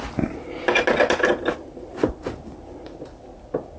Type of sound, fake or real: real